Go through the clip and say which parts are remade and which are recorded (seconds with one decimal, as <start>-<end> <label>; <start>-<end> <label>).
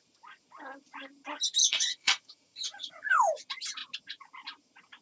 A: 0.0-1.6 recorded; 1.6-3.1 remade; 3.1-5.0 recorded